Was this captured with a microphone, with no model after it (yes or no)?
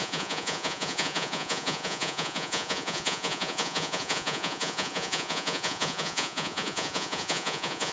no